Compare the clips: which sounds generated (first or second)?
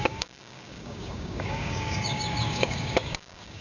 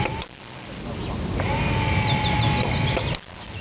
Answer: first